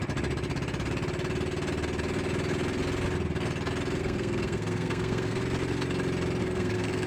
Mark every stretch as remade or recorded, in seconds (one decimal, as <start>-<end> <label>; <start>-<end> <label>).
0.0-4.0 recorded; 4.0-5.4 remade; 5.4-6.4 recorded; 6.4-7.1 remade